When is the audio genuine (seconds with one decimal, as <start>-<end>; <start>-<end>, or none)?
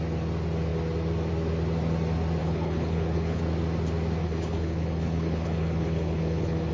0.0-2.4; 3.4-4.2